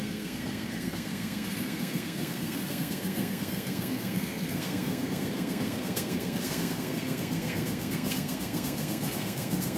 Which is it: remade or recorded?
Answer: remade